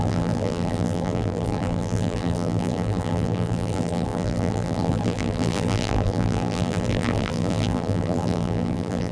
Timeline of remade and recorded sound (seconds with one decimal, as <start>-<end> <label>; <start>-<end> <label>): 0.0-9.1 remade